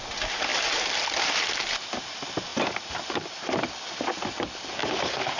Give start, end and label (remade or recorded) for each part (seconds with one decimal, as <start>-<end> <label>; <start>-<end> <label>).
0.0-5.4 recorded